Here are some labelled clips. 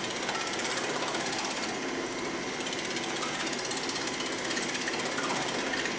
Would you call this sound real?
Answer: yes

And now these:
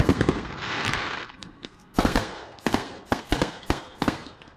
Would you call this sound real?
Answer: no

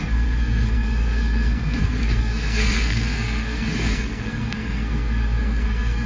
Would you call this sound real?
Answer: no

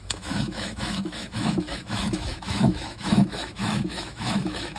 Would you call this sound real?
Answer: no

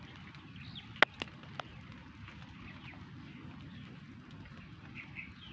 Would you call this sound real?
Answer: yes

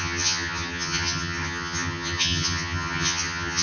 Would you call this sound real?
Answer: no